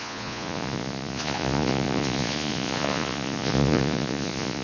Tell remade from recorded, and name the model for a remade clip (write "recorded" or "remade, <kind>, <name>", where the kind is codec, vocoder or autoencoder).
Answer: remade, vocoder, Vocos